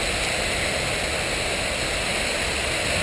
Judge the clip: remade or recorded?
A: recorded